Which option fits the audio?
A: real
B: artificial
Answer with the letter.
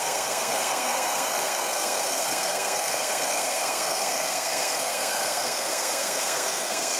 B